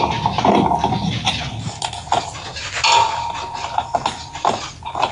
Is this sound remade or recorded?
recorded